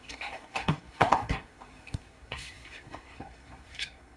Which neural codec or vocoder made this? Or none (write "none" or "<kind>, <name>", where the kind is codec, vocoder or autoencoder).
codec, SNAC